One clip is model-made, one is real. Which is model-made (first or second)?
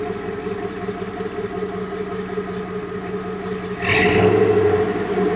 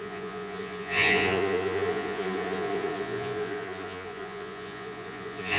second